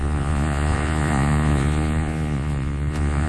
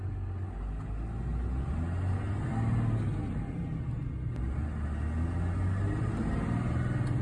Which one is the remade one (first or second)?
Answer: first